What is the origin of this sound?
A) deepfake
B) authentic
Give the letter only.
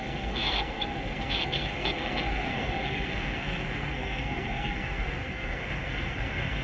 A